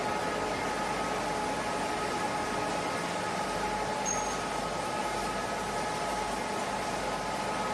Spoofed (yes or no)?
no